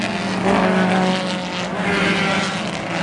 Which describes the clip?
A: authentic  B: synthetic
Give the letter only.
A